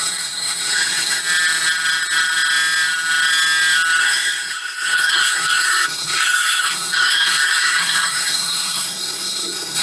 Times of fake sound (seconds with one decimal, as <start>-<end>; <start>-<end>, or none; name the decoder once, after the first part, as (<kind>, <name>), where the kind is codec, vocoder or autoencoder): 0.0-1.2 (codec, SNAC); 4.0-9.8